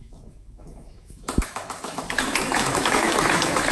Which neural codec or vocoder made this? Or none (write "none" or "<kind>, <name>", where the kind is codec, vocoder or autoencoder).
autoencoder, DAC-VAE